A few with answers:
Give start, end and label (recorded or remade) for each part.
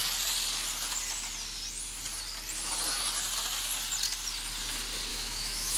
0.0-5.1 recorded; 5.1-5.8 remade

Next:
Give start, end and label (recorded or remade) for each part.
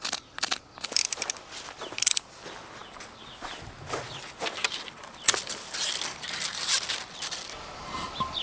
0.0-8.4 recorded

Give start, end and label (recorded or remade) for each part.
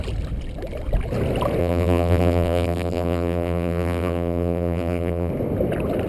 0.0-1.6 recorded; 1.6-5.3 remade; 5.3-6.1 recorded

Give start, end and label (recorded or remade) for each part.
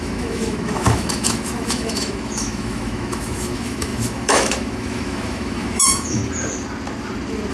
0.0-6.2 remade; 6.2-7.5 recorded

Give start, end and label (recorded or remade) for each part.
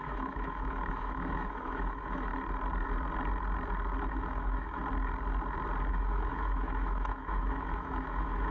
0.0-2.3 remade; 2.3-4.1 recorded; 4.1-4.8 remade; 4.8-5.9 recorded; 5.9-8.5 remade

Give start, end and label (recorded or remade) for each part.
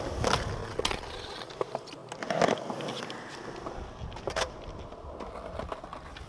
0.0-0.6 recorded; 0.6-1.5 remade; 1.5-6.3 recorded